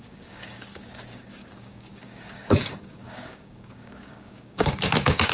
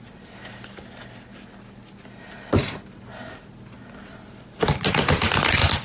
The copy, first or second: first